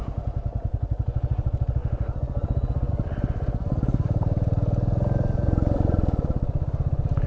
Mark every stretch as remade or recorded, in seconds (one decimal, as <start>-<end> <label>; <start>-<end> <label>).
0.0-7.3 remade